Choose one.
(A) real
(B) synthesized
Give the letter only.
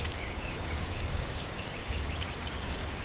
B